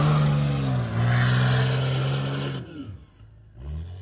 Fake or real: real